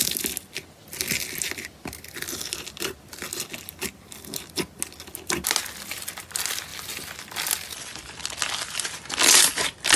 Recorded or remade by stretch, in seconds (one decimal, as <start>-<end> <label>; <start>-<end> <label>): 0.0-10.0 recorded